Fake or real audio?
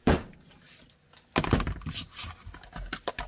real